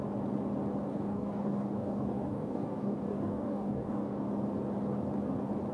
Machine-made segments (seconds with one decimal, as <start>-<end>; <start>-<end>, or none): 0.9-4.3